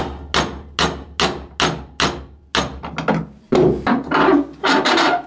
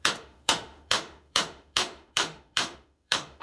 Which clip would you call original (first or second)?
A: first